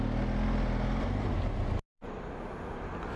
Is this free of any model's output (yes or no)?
yes